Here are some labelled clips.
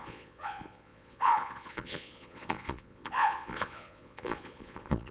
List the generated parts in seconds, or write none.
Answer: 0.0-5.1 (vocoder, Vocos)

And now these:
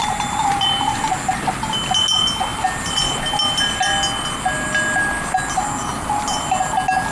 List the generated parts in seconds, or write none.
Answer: 0.0-1.0 (vocoder, BigVGAN v2); 5.9-6.6